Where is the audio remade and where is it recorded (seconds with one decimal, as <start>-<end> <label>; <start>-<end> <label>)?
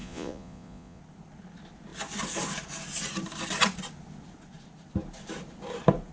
0.0-1.0 remade; 1.0-6.1 recorded